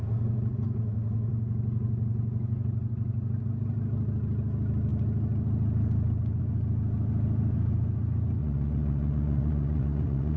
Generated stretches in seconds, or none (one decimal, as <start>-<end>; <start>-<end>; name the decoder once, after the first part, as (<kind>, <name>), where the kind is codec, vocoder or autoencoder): 8.4-10.4 (vocoder, Vocos)